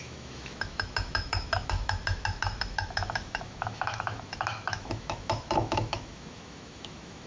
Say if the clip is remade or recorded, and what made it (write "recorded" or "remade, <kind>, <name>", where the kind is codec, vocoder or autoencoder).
remade, autoencoder, DAC-VAE